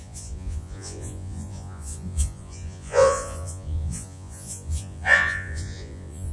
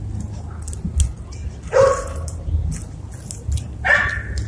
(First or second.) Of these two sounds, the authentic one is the second